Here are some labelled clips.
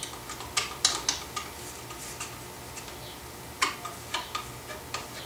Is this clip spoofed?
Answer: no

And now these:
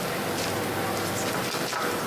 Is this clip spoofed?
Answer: no